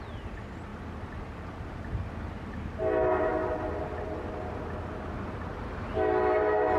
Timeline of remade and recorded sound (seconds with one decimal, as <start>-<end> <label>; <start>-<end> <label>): 0.0-6.8 recorded